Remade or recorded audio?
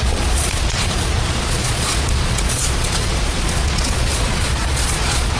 remade